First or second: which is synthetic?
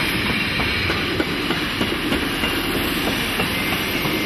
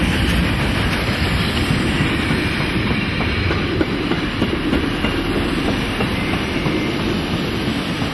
second